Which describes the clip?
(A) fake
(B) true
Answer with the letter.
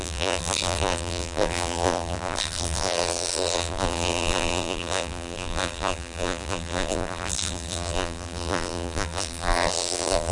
A